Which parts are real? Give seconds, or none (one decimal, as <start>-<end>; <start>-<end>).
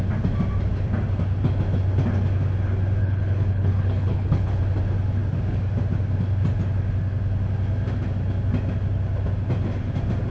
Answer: 0.0-3.0; 4.6-10.3